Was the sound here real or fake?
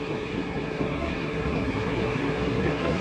fake